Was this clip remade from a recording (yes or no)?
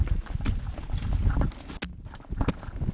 no